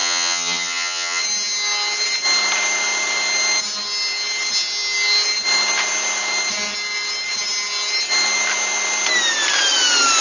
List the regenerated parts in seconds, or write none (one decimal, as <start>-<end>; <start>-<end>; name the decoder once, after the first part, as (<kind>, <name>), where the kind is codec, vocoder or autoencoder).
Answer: 0.0-1.2 (vocoder, HiFi-GAN)

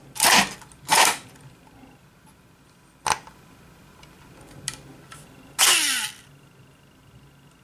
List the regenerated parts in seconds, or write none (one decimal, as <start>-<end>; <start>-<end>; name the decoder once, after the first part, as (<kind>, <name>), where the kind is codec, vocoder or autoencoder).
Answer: none

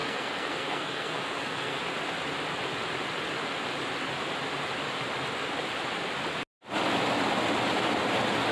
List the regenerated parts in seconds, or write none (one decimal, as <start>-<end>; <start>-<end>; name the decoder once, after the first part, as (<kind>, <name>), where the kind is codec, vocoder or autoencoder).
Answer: 0.0-1.8 (codec, SNAC)

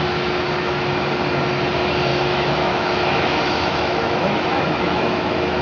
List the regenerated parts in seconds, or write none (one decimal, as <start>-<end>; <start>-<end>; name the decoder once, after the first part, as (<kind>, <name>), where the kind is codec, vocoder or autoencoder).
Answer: 2.1-5.6 (autoencoder, DAC-VAE)

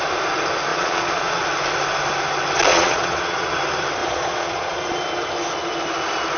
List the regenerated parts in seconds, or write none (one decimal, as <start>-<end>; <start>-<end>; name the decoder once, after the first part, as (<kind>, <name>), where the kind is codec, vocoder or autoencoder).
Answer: 0.7-1.4 (vocoder, Vocos); 2.7-3.5; 4.0-4.8

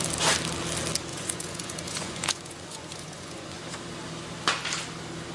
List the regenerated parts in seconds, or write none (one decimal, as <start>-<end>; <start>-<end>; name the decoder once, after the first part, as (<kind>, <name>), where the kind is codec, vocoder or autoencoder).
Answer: 1.1-3.6 (vocoder, Vocos)

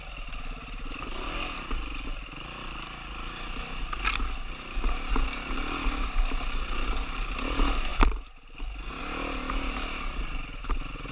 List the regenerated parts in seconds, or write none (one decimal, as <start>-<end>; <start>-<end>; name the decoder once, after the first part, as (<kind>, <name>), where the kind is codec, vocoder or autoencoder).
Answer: none

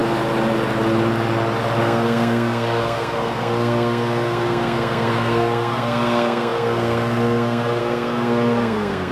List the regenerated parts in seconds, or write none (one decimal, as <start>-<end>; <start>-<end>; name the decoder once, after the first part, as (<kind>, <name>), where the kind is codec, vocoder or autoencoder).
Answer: 1.8-9.1 (codec, SNAC)